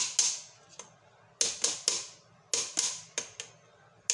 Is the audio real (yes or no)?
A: yes